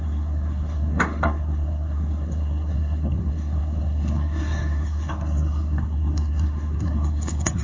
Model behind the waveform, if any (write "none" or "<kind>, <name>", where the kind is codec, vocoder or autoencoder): codec, SNAC